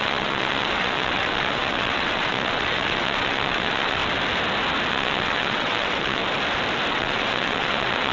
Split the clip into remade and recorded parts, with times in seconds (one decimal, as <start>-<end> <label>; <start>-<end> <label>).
0.0-4.0 remade; 4.0-4.9 recorded; 4.9-6.2 remade; 6.2-6.9 recorded; 6.9-8.1 remade